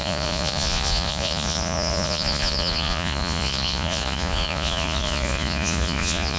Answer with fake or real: fake